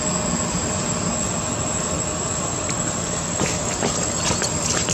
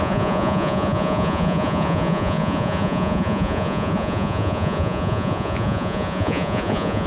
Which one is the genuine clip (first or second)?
first